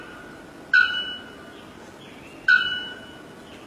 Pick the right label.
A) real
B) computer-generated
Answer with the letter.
A